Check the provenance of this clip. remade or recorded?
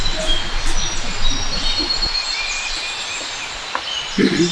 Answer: recorded